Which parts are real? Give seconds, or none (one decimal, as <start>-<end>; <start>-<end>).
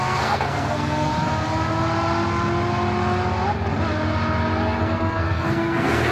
1.1-4.8